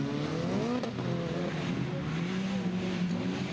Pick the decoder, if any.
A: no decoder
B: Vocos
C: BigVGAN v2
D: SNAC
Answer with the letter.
A